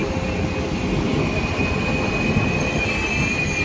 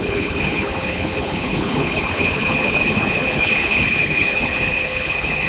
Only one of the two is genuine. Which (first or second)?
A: first